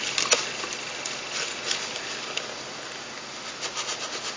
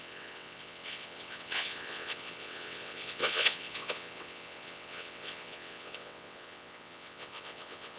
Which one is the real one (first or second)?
first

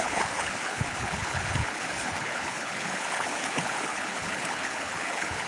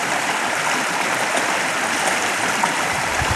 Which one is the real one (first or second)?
second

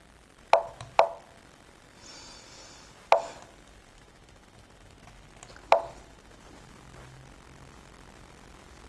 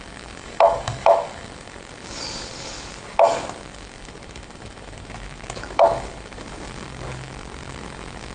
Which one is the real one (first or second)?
first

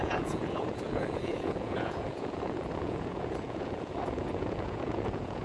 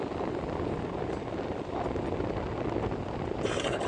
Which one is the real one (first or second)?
second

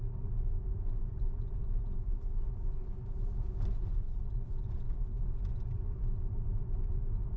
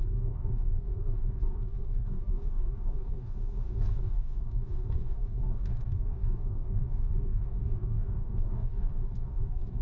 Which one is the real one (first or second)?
first